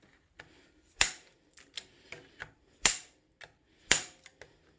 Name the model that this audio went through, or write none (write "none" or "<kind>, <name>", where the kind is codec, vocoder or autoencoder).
none